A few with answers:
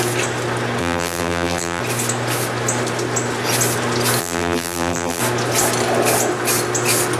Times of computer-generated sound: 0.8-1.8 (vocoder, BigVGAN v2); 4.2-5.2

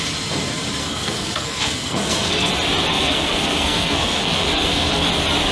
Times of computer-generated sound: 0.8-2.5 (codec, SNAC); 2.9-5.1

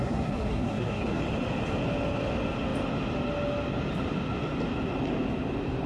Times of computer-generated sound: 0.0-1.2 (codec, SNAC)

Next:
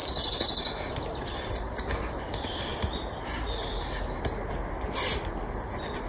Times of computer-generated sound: none